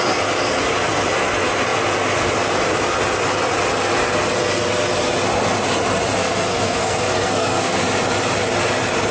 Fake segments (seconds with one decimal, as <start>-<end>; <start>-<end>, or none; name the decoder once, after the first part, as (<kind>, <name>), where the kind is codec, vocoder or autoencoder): 6.2-7.8 (codec, SNAC)